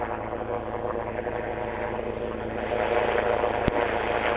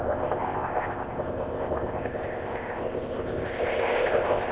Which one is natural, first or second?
first